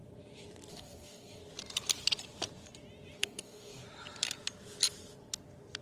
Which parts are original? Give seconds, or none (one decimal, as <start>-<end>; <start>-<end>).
0.0-0.7; 1.4-3.2; 3.8-5.8